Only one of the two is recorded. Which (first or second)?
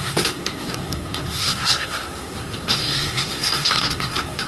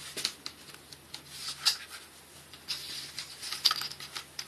second